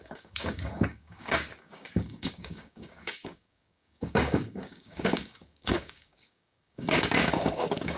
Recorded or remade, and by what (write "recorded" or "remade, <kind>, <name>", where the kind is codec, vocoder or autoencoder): remade, codec, DAC